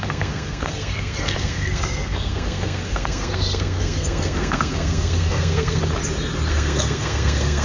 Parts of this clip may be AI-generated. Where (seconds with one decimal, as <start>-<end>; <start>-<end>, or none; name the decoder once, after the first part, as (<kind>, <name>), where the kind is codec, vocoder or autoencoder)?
0.0-5.8 (codec, SNAC); 6.5-7.6